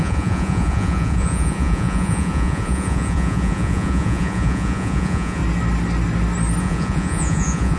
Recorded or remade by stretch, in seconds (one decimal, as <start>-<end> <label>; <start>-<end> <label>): 0.0-5.4 remade; 5.4-6.6 recorded; 6.6-7.8 remade